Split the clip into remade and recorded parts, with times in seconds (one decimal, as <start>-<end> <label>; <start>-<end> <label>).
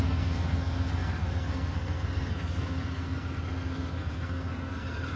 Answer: 0.0-5.2 remade